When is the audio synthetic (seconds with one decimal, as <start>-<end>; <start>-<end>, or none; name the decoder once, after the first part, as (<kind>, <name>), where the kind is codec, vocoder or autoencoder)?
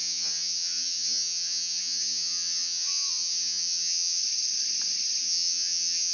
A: 0.0-4.2 (vocoder, HiFi-GAN); 5.2-6.1